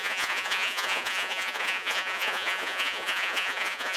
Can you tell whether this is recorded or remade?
remade